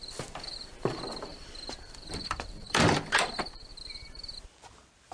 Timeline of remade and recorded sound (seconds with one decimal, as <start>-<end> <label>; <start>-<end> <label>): 0.0-3.1 remade; 3.1-3.7 recorded; 3.7-4.4 remade; 4.4-5.1 recorded